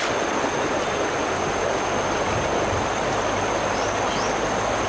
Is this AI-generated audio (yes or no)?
no